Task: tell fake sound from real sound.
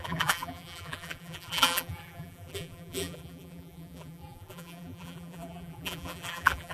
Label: fake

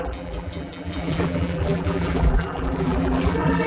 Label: fake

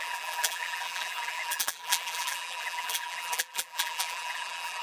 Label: fake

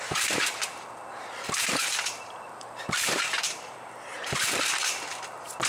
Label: fake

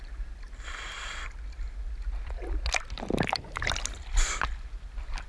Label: real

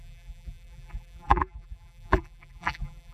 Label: fake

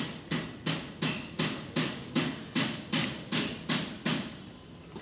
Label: real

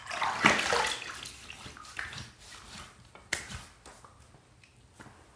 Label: real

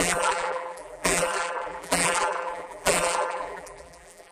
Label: fake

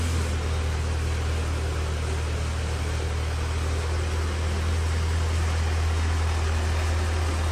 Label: real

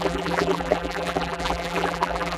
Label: fake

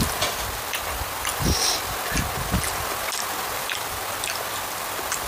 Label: fake